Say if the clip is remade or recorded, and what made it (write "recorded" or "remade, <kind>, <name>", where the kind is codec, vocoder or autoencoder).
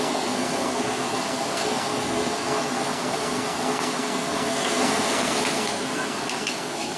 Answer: remade, codec, SNAC